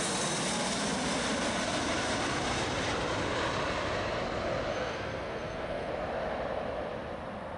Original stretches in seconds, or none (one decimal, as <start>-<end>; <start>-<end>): 0.0-4.7; 5.9-7.6